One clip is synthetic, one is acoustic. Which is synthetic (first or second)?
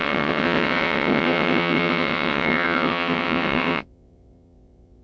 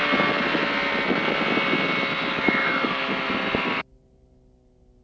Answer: first